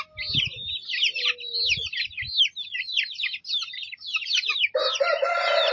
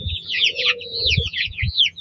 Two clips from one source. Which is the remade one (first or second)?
second